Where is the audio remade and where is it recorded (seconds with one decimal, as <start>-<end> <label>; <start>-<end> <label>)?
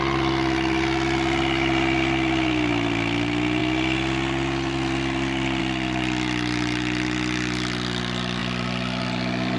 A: 0.0-9.6 recorded